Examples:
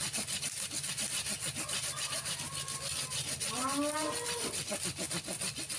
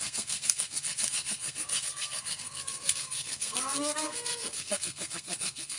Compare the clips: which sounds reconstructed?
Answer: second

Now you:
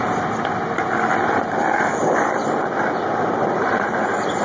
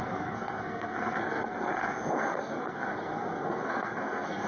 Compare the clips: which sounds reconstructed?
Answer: second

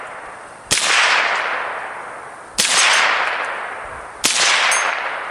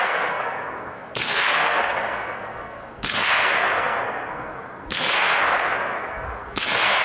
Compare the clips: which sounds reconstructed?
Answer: second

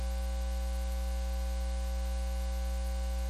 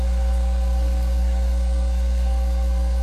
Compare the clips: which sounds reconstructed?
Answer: second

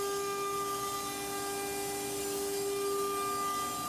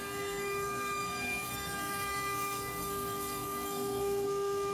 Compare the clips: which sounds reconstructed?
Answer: second